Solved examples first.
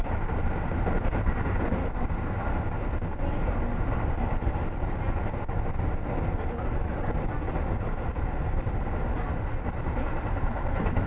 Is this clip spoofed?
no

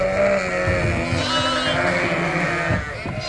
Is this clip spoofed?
no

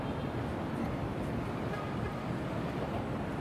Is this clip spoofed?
no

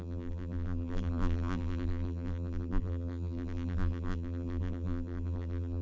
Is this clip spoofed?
yes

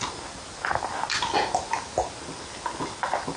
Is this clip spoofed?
no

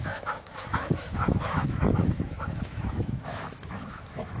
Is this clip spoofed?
yes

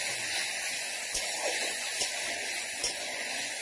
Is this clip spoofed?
yes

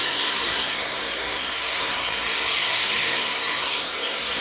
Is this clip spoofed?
yes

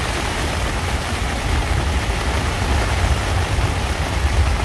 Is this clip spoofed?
no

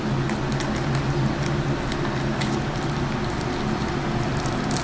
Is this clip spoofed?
no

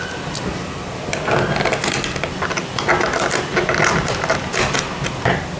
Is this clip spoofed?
no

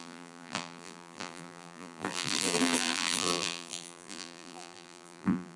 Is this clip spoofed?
yes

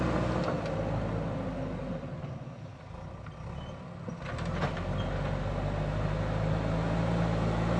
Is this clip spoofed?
no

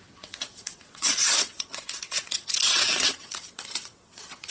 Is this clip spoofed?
yes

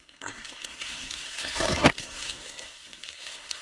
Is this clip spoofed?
yes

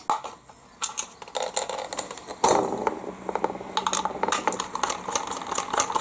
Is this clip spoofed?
no